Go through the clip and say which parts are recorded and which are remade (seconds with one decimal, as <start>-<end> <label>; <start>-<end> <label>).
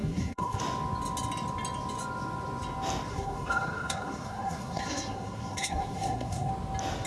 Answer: 0.0-0.6 remade; 0.6-3.1 recorded; 3.1-6.5 remade; 6.5-7.1 recorded